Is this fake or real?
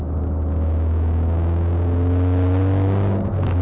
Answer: real